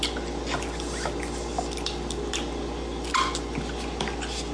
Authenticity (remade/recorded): recorded